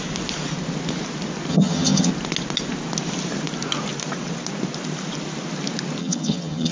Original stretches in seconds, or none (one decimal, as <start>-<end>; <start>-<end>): 0.0-1.5; 2.1-6.0